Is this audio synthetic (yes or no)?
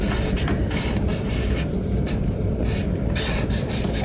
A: yes